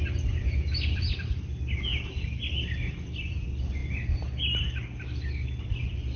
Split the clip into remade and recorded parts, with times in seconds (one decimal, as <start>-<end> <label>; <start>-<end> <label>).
0.0-6.2 recorded

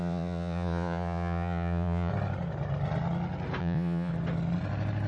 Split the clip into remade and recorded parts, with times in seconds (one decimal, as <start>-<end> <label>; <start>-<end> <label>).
0.0-2.1 remade; 2.1-3.6 recorded; 3.6-4.1 remade; 4.1-5.1 recorded

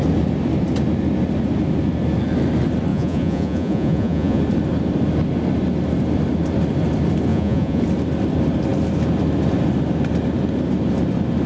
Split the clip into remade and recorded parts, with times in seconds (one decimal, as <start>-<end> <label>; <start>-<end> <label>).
0.0-2.9 recorded; 2.9-4.4 remade; 4.4-7.3 recorded; 7.3-7.8 remade; 7.8-11.5 recorded

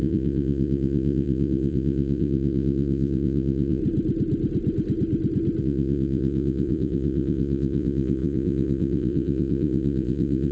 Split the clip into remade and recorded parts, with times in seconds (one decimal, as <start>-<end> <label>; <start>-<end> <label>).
0.0-3.8 remade; 3.8-5.6 recorded; 5.6-10.5 remade

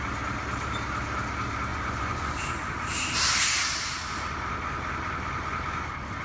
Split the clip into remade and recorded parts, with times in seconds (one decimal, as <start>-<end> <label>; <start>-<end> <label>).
0.0-1.7 recorded; 1.7-2.3 remade; 2.3-6.2 recorded

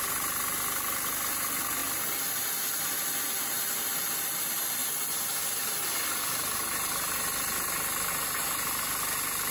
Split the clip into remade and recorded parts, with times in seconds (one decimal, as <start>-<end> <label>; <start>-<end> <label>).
0.0-9.5 recorded

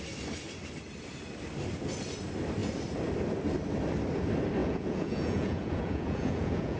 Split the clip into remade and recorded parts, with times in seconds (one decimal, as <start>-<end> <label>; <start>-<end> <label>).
0.0-4.6 recorded; 4.6-6.8 remade